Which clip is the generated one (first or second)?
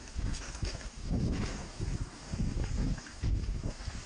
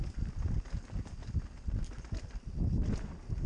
first